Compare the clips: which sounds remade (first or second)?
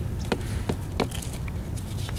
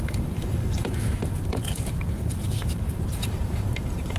second